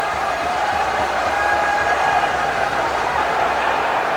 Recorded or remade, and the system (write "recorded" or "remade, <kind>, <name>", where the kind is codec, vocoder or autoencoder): remade, vocoder, BigVGAN v2